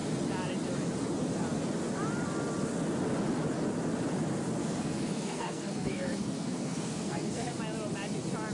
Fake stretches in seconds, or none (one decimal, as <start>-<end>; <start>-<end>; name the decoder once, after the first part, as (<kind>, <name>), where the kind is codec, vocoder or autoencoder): 4.6-7.5 (codec, SNAC)